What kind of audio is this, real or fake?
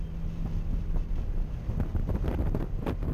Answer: real